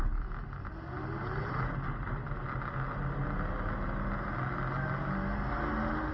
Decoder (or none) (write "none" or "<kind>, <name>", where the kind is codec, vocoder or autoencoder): none